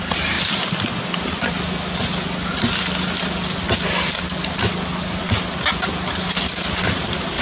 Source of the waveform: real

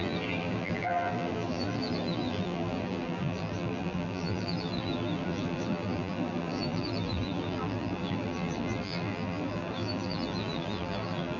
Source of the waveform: fake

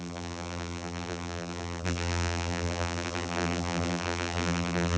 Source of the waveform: fake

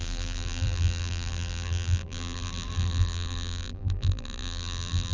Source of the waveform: fake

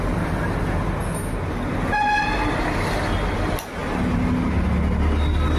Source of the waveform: real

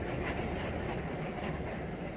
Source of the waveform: real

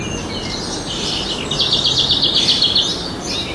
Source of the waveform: real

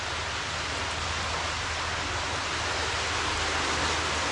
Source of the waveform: real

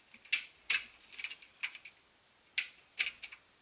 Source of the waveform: real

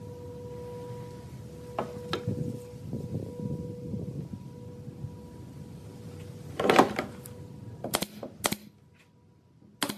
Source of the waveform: real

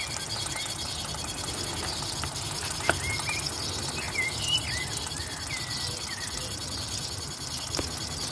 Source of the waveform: real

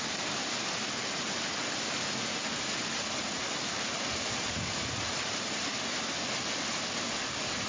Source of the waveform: real